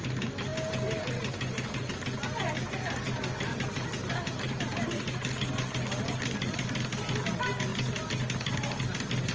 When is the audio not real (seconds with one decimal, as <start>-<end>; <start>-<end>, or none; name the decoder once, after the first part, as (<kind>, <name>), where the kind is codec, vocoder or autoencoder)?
none